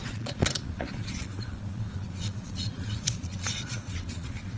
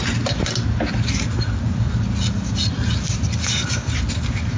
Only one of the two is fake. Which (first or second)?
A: first